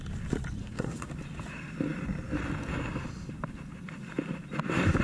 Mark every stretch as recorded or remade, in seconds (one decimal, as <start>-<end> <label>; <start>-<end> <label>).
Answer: 0.0-0.6 recorded; 0.6-1.1 remade; 1.1-5.0 recorded